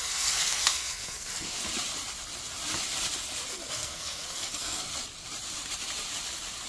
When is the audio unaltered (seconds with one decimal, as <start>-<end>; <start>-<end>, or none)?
1.6-3.5; 4.9-6.7